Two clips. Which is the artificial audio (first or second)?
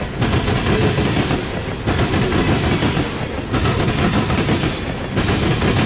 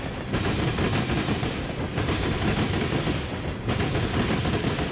second